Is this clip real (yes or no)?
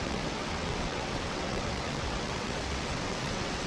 no